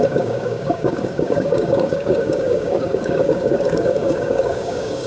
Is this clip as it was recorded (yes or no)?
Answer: no